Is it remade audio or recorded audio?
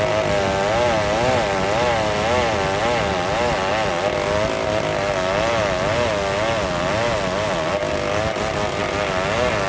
recorded